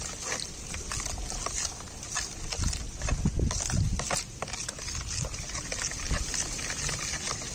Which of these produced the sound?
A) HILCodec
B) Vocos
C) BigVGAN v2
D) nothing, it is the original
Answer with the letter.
D